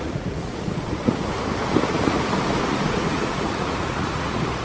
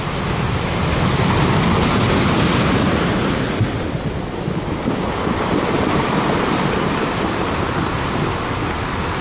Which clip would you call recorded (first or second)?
second